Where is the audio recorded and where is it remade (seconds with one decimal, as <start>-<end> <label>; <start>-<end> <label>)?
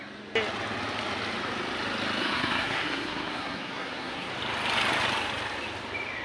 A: 0.0-2.2 recorded; 2.2-4.3 remade; 4.3-6.2 recorded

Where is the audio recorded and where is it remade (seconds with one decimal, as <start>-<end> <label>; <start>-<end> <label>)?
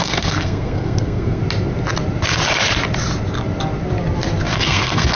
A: 0.0-1.4 remade; 1.4-4.5 recorded; 4.5-5.2 remade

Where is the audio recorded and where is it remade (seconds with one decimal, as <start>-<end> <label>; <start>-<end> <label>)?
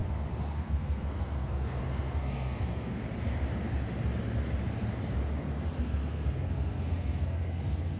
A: 0.0-3.0 remade; 3.0-5.8 recorded; 5.8-8.0 remade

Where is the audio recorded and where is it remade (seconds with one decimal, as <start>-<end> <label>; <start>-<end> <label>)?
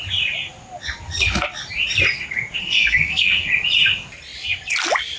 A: 0.0-2.6 recorded; 2.6-3.5 remade; 3.5-5.2 recorded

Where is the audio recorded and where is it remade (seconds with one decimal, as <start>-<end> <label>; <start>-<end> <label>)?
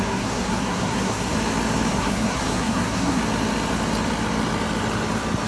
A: 0.0-1.3 remade; 1.3-1.9 recorded; 1.9-3.2 remade; 3.2-5.5 recorded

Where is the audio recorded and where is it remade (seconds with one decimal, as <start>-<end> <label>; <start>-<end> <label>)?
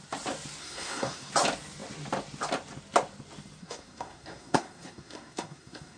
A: 0.0-0.6 recorded; 0.6-1.3 remade; 1.3-3.6 recorded; 3.6-6.0 remade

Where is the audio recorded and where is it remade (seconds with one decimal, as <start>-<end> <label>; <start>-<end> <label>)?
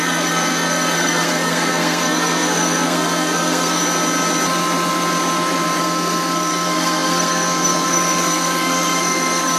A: 0.0-3.8 remade; 3.8-5.8 recorded; 5.8-9.6 remade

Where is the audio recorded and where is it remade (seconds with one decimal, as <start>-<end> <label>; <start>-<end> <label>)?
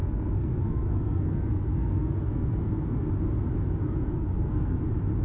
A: 0.0-3.1 remade; 3.1-3.8 recorded; 3.8-4.8 remade; 4.8-5.2 recorded